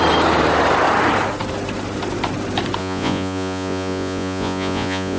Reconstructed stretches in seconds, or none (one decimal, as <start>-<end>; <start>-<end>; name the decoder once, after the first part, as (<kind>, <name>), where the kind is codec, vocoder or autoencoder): 2.8-5.2 (vocoder, Vocos)